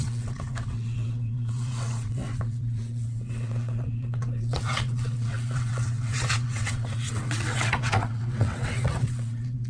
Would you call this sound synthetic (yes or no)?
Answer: yes